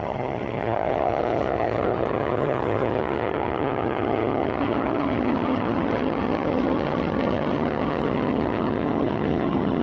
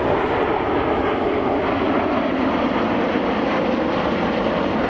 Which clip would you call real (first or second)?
second